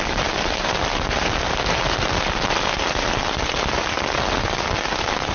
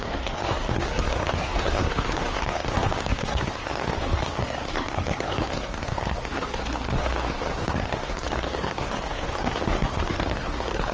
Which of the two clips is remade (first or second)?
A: second